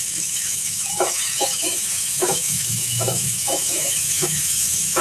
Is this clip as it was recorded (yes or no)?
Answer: no